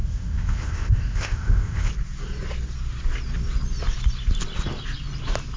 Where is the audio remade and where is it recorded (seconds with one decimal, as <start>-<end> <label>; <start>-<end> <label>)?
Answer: 0.0-1.9 remade; 1.9-5.6 recorded

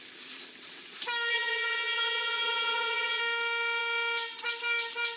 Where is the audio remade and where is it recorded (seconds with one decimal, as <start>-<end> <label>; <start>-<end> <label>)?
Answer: 0.0-1.3 recorded; 1.3-3.2 remade; 3.2-5.2 recorded

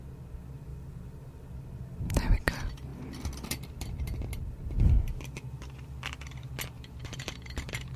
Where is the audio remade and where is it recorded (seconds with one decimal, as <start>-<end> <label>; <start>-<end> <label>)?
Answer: 0.0-0.7 recorded; 0.7-1.3 remade; 1.3-7.0 recorded; 7.0-8.0 remade

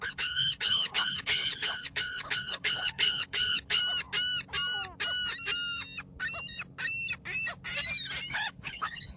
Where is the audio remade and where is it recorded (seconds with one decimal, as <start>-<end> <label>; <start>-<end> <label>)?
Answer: 0.0-3.8 remade; 3.8-8.3 recorded; 8.3-9.2 remade